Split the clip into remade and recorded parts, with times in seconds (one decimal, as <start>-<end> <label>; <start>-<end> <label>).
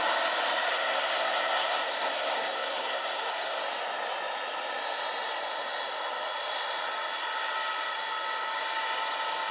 0.0-0.7 recorded; 0.7-3.6 remade; 3.6-9.5 recorded